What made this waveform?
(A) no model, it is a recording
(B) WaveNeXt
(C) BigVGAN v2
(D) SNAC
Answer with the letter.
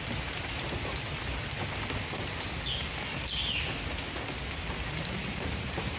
A